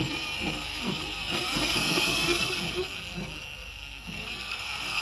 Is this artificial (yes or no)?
yes